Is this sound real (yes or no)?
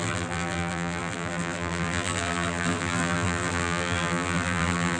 no